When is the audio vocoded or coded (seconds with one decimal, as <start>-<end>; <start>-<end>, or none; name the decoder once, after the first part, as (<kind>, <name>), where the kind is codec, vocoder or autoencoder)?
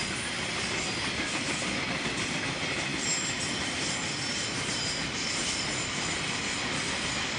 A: none